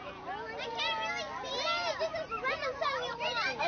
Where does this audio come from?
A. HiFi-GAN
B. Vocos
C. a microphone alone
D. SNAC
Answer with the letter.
C